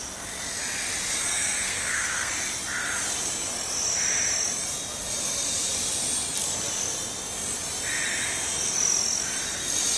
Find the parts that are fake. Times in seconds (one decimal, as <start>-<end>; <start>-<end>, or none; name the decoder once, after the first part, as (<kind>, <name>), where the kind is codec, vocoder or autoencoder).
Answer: 1.3-2.3 (codec, SNAC)